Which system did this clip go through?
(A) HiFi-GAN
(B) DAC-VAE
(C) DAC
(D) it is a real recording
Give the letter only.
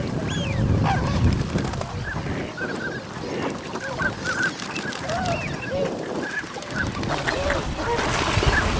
D